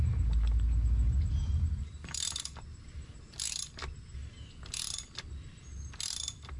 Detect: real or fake real